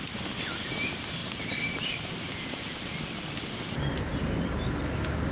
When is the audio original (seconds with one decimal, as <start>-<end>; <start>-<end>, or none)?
0.0-1.2; 3.0-5.3